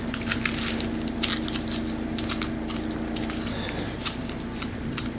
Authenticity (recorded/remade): recorded